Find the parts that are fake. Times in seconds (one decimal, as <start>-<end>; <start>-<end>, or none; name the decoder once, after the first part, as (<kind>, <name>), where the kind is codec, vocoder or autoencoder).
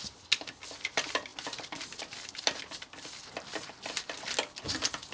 none